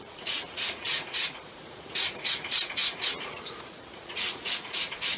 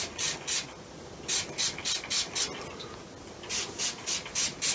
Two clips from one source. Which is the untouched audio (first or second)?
second